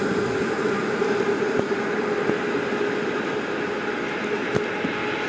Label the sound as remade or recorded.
recorded